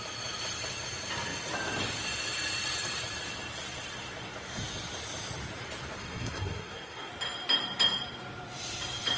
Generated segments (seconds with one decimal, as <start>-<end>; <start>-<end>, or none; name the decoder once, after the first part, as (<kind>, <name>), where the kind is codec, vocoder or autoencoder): 6.0-7.1 (codec, SNAC)